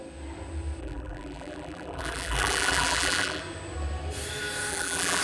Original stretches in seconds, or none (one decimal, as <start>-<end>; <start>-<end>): 0.0-0.8; 3.4-4.7

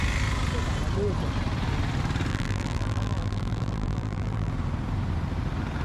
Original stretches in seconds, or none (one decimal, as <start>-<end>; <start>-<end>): 0.0-2.3; 4.5-5.8

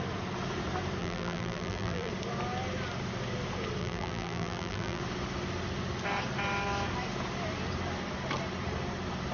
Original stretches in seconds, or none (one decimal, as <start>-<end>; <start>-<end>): 0.0-1.0; 2.1-3.8; 5.0-9.3

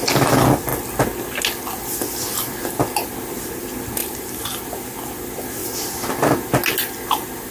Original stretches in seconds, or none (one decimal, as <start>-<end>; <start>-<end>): 0.0-4.0; 4.6-7.5

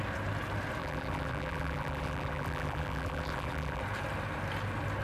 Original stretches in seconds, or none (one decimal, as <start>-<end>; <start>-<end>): 0.0-0.8; 3.8-5.0

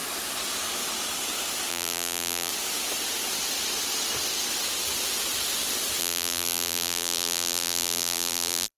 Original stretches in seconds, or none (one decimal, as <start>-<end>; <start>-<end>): 0.0-1.7; 2.5-6.0

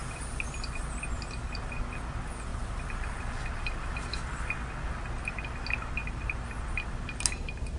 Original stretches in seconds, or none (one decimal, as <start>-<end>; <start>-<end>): 0.0-2.5; 3.3-6.0; 6.5-7.8